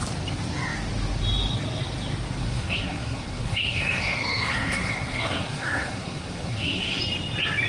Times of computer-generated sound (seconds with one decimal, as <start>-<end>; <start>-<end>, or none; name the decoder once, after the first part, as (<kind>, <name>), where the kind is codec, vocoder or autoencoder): 2.4-7.0 (codec, SNAC)